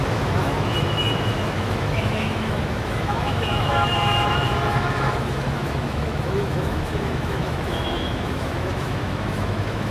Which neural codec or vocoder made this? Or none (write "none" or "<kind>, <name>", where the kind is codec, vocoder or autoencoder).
autoencoder, DAC-VAE